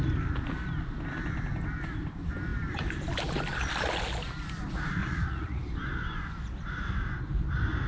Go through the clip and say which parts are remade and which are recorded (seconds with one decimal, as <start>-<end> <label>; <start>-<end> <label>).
0.0-5.0 recorded; 5.0-5.6 remade; 5.6-7.9 recorded

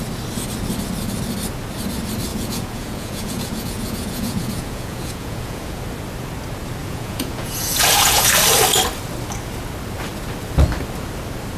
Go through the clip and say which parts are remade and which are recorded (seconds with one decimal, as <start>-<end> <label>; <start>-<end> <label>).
0.0-2.3 recorded; 2.3-5.8 remade; 5.8-6.8 recorded; 6.8-8.3 remade; 8.3-11.6 recorded